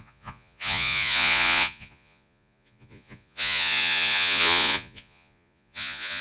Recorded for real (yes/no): no